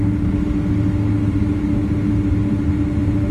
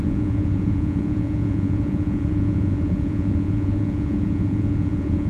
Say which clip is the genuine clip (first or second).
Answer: first